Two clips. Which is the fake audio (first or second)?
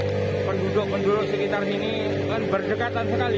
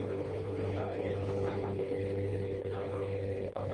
second